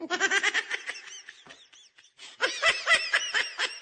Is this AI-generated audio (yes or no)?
no